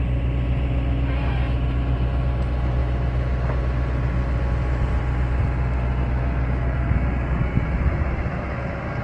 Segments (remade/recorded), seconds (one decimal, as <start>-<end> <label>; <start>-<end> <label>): 0.0-2.8 recorded; 2.8-3.6 remade; 3.6-9.0 recorded